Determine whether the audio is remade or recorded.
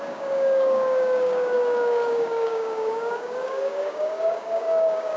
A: remade